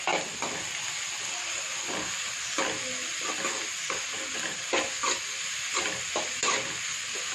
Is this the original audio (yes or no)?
yes